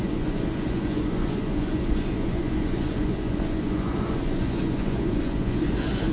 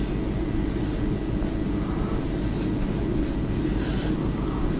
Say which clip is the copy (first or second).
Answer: first